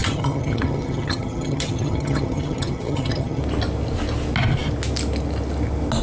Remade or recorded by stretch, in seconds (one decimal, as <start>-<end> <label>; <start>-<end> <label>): 0.0-3.4 remade; 3.4-6.0 recorded